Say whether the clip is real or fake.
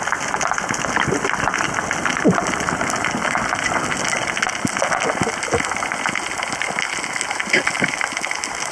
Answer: real